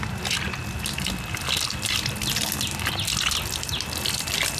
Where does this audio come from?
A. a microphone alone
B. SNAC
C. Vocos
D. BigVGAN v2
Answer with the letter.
A